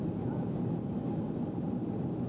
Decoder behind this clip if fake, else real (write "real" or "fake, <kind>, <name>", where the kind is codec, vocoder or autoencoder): real